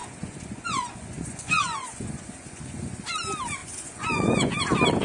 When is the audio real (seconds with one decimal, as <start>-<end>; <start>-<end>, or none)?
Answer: 3.0-3.6; 4.6-5.0